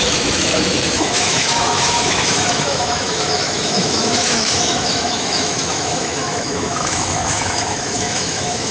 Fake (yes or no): yes